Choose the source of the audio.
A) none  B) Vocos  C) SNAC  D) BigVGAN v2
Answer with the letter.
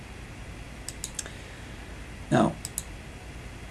A